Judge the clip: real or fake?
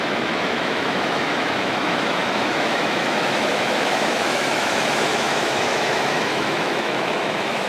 fake